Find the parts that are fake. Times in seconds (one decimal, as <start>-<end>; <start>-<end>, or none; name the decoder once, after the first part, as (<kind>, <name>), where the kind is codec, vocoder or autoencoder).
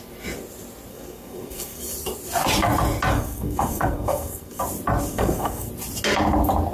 0.9-1.8 (codec, SNAC); 3.1-4.6; 5.1-5.7